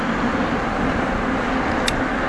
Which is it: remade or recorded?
recorded